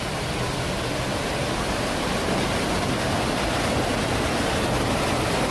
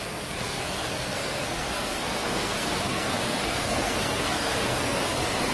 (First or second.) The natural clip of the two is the first